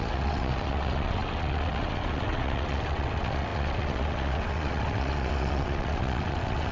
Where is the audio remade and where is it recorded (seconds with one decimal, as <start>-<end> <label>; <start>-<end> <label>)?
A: 0.0-6.7 remade